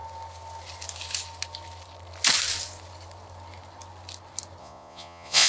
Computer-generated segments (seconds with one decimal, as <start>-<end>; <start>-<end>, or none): 4.6-5.5